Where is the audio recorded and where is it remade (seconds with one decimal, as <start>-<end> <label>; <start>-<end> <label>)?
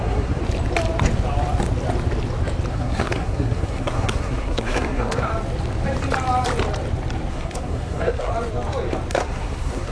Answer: 0.0-0.4 remade; 0.4-2.7 recorded; 2.7-5.3 remade; 5.3-7.3 recorded; 7.3-8.3 remade; 8.3-9.1 recorded; 9.1-9.9 remade